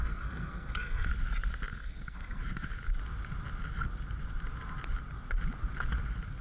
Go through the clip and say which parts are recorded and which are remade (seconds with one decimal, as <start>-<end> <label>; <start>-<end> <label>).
0.0-1.1 remade; 1.1-1.7 recorded; 1.7-2.4 remade; 2.4-6.4 recorded